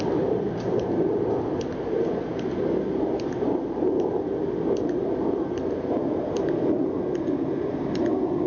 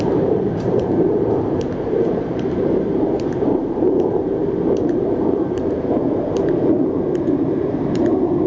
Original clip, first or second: first